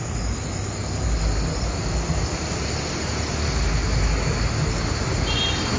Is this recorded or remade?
recorded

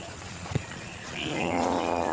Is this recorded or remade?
remade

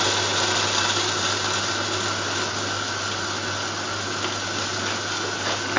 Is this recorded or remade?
recorded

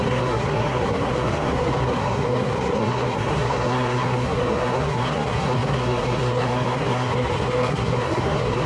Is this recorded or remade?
remade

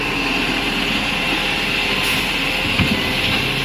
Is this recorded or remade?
recorded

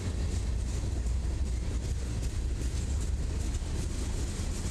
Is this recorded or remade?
recorded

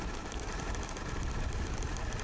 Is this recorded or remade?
recorded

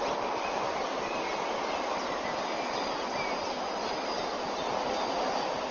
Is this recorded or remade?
recorded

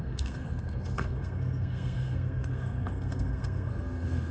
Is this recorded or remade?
remade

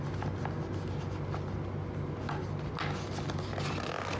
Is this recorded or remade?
recorded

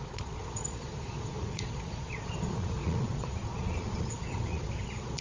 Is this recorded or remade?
remade